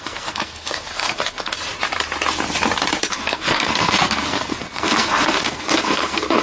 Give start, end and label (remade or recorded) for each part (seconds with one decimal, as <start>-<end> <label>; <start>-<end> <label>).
0.0-1.5 remade; 1.5-3.0 recorded; 3.0-6.4 remade